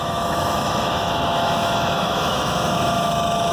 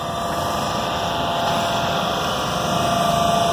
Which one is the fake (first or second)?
first